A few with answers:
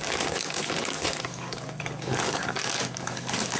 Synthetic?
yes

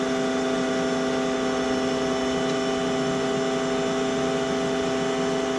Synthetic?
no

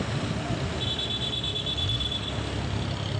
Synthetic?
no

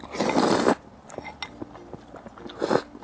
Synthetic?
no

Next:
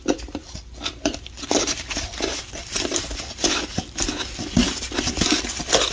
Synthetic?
no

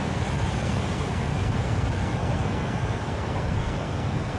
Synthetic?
yes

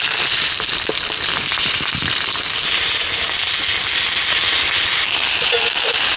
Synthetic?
yes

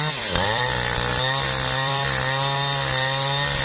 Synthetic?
yes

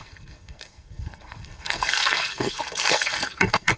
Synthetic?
yes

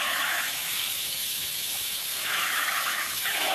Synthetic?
yes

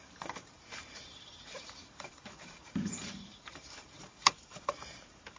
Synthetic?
yes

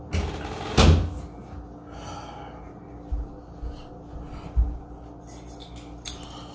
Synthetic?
no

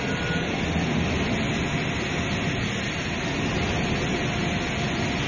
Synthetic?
no